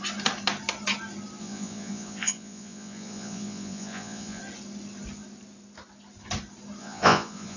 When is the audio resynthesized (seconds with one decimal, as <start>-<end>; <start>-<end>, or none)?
1.4-4.4; 6.8-7.6